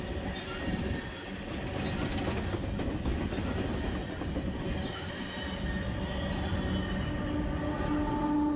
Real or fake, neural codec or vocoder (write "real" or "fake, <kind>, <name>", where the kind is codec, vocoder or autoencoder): real